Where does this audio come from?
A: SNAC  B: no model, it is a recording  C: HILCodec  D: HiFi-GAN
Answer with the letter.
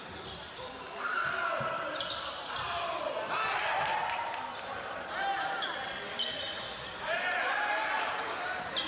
B